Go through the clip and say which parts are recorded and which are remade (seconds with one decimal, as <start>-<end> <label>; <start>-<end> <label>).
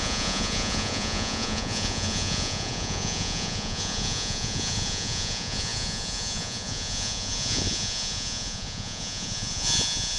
0.0-10.2 remade